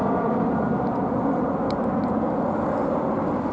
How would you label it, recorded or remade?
recorded